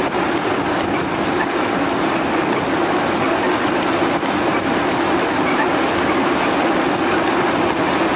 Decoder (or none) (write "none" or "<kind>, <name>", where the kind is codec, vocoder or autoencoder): none